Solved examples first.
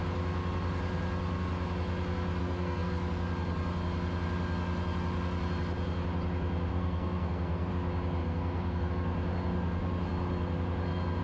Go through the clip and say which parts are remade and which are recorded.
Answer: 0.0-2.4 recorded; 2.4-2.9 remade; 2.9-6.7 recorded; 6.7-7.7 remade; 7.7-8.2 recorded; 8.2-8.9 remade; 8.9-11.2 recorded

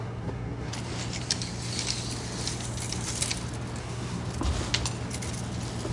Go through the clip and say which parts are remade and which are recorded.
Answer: 0.0-0.7 remade; 0.7-3.8 recorded; 3.8-4.2 remade; 4.2-5.9 recorded